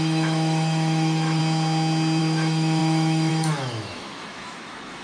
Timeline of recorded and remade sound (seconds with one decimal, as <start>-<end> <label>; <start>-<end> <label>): 0.0-1.4 remade; 1.4-2.2 recorded; 2.2-5.0 remade